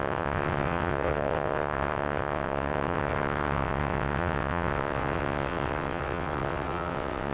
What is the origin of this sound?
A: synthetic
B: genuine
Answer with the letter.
A